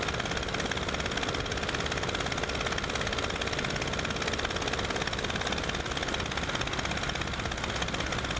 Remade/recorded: recorded